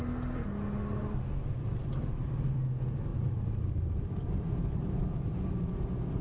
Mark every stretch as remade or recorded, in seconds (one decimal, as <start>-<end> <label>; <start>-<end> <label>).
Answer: 0.0-1.0 recorded; 1.0-2.3 remade; 2.3-3.1 recorded; 3.1-4.9 remade; 4.9-6.2 recorded